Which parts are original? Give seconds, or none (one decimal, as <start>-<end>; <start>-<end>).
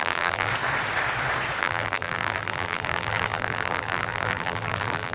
0.5-1.6